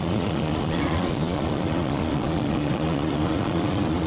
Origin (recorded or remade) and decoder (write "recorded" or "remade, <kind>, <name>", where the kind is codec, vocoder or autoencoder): remade, vocoder, Vocos